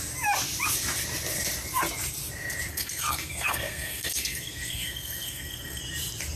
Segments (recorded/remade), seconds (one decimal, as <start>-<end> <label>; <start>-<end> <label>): 0.0-2.7 recorded; 2.7-5.8 remade; 5.8-6.4 recorded